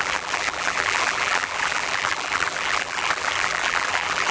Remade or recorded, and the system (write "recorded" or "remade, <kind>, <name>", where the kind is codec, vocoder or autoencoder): remade, vocoder, BigVGAN v2